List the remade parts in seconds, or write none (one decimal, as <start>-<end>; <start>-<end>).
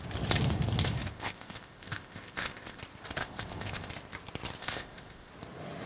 1.1-2.8; 3.2-3.9; 4.6-5.3